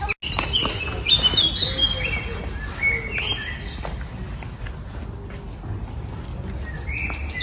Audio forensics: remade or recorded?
recorded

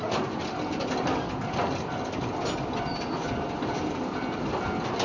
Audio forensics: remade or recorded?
recorded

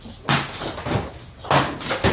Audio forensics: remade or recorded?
recorded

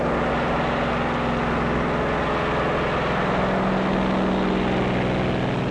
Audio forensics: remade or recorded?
recorded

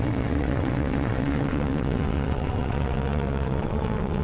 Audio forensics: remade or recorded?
remade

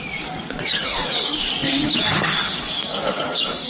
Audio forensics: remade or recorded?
remade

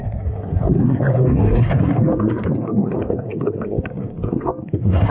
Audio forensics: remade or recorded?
remade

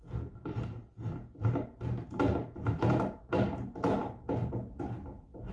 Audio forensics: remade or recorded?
recorded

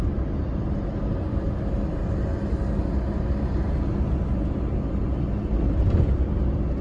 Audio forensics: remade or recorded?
recorded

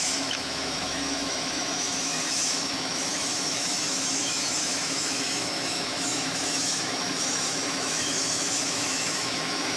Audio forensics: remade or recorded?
remade